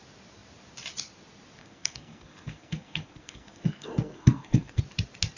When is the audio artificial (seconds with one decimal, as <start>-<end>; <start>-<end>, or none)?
1.6-4.8